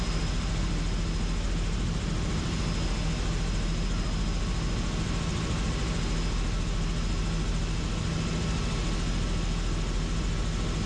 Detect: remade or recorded recorded